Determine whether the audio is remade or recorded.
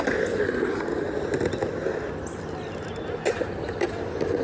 recorded